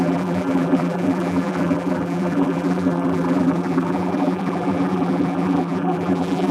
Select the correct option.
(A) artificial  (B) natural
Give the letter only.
A